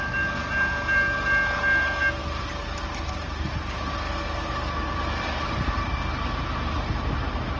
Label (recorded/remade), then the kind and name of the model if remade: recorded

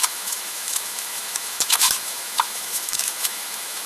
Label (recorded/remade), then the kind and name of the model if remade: remade, autoencoder, DAC-VAE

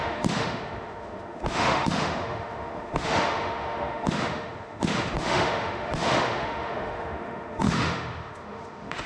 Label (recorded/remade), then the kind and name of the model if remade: remade, autoencoder, DAC-VAE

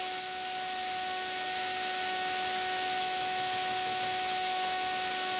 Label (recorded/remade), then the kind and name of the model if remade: remade, autoencoder, DAC-VAE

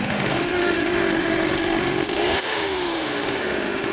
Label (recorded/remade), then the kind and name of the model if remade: remade, autoencoder, DAC-VAE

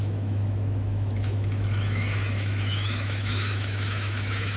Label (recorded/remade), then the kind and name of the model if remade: remade, autoencoder, DAC-VAE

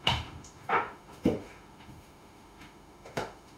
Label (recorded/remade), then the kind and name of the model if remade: remade, autoencoder, DAC-VAE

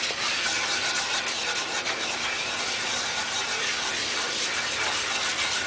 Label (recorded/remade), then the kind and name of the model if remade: recorded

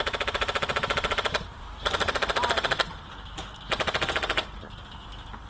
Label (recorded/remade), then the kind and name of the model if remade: recorded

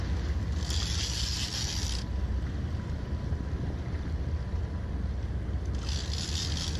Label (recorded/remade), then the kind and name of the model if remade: recorded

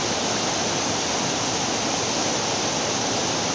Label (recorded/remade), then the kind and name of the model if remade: recorded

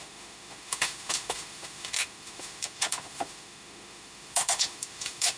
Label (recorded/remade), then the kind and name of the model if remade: remade, autoencoder, DAC-VAE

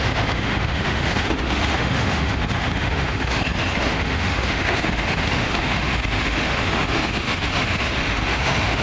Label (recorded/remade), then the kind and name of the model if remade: remade, autoencoder, DAC-VAE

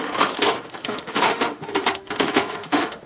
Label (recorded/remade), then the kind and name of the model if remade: remade, autoencoder, DAC-VAE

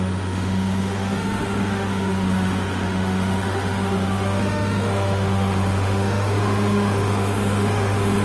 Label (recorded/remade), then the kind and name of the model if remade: remade, autoencoder, DAC-VAE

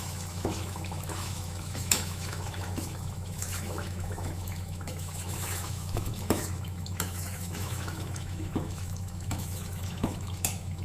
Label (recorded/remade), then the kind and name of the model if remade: remade, autoencoder, DAC-VAE